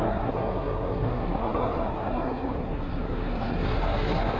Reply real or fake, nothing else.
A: fake